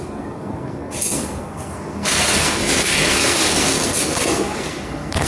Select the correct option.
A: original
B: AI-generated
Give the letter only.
B